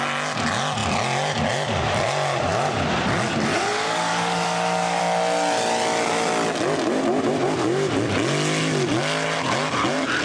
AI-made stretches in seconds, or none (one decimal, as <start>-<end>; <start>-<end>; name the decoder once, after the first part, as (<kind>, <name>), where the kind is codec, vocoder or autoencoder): 3.5-5.0 (codec, DAC)